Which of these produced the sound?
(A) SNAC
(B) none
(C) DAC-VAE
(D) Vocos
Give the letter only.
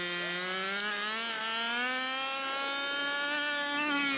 B